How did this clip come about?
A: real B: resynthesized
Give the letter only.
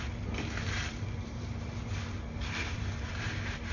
B